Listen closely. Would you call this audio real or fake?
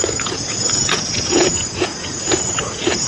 fake